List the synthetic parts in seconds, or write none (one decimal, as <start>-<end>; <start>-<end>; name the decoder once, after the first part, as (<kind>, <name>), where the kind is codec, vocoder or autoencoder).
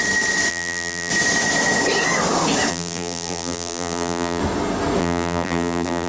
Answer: 0.5-1.1 (vocoder, BigVGAN v2); 2.7-4.4; 5.0-6.1